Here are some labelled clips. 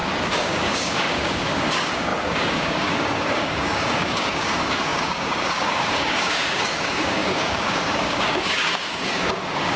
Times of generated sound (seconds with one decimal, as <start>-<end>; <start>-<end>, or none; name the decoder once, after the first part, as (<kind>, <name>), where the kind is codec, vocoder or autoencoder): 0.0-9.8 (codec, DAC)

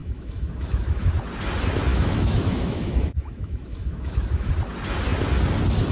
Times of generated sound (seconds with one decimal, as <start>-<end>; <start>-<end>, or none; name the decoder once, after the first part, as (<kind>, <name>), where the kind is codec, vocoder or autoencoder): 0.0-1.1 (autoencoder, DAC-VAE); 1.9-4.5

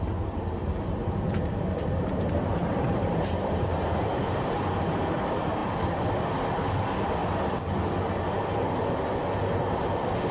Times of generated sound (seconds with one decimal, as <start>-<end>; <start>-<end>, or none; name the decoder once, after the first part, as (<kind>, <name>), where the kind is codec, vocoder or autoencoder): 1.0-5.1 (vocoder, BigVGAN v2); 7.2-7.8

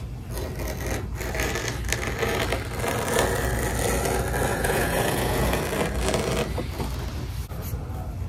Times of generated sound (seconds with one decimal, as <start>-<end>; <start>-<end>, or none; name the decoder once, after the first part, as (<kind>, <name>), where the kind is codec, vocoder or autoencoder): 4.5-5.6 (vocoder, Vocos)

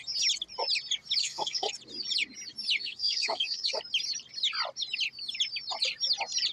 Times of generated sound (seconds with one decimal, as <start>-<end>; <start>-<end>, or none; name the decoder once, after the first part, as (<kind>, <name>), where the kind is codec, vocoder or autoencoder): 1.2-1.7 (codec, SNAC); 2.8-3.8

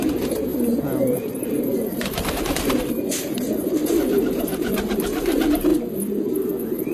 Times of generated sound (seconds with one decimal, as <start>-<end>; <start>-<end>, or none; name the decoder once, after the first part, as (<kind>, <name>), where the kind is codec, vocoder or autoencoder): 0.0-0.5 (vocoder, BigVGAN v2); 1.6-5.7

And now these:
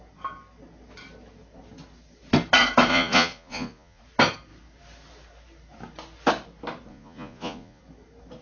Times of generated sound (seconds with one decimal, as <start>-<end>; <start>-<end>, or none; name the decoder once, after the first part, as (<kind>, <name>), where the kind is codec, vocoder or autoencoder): 2.9-4.0 (vocoder, Vocos); 6.9-7.8

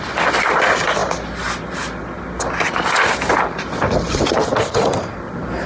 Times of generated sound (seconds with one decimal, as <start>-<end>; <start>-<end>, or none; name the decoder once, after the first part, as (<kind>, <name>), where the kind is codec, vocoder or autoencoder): none